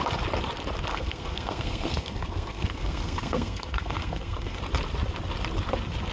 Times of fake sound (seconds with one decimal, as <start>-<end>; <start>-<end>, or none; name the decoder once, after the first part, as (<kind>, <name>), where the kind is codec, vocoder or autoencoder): 0.9-4.6 (codec, SNAC)